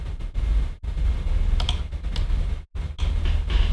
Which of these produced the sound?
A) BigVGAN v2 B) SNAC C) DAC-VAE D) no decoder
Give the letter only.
D